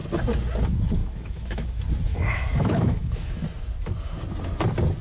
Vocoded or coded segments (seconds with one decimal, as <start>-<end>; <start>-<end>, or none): 1.0-1.7; 2.1-3.4